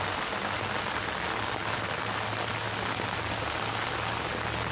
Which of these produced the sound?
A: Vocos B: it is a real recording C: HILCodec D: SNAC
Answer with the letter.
B